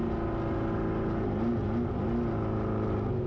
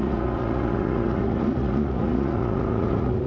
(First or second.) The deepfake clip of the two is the second